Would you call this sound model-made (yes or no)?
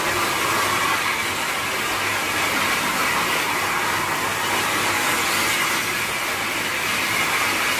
no